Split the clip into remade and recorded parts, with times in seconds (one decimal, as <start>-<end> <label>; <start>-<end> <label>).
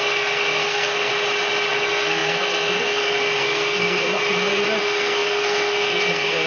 0.0-1.1 remade; 1.1-1.7 recorded; 1.7-4.2 remade; 4.2-4.8 recorded; 4.8-6.5 remade